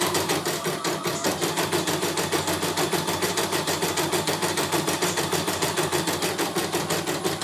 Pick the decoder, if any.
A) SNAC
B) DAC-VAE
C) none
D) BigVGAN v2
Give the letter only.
D